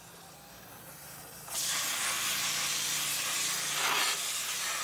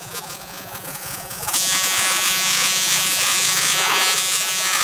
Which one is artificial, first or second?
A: second